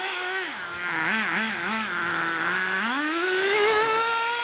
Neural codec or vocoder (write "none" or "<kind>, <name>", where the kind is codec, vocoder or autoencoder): autoencoder, DAC-VAE